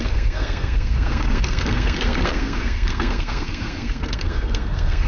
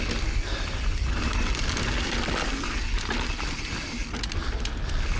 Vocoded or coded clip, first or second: first